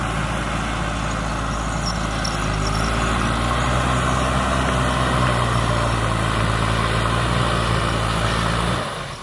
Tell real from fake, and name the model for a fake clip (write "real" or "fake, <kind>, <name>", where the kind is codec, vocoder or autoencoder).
real